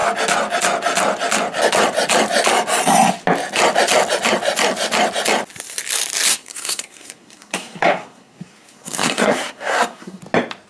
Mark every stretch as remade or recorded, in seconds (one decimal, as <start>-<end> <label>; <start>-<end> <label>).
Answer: 0.0-6.3 recorded; 6.3-10.2 remade; 10.2-10.7 recorded